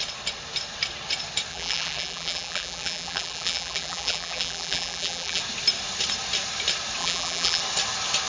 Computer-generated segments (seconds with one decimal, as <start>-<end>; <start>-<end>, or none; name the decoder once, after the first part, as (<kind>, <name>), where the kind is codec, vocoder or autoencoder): 1.5-5.4 (vocoder, BigVGAN v2); 7.0-7.6